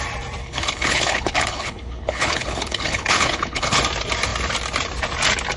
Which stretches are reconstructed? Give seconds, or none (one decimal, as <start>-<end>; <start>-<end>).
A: 0.4-3.8